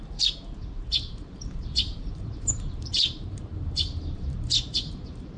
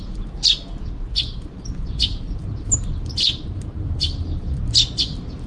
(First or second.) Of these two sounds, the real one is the second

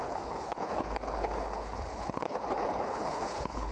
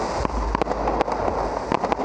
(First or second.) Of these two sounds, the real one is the second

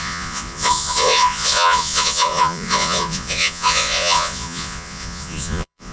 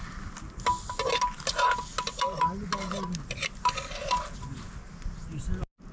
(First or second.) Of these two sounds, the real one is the second